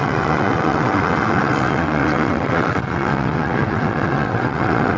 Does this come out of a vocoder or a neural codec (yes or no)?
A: yes